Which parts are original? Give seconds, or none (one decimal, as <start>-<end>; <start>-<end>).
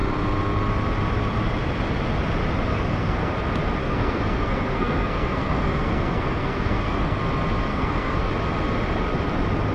0.0-2.7; 3.3-3.8; 7.2-7.7; 8.3-9.7